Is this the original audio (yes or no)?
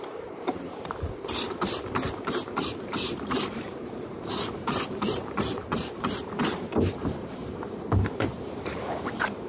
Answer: no